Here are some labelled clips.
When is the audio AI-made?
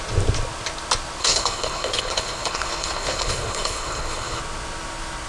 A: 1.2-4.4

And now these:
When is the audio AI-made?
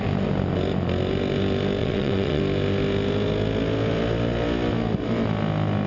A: 1.8-2.4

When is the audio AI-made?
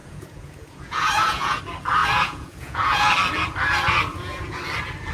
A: 0.0-1.6; 2.0-3.1; 4.1-4.6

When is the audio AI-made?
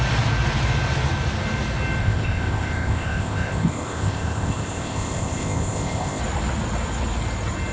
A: 2.0-6.2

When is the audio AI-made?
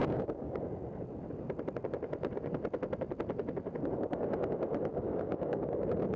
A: 0.0-0.6; 4.9-5.7